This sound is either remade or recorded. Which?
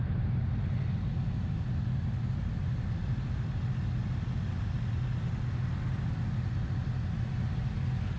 recorded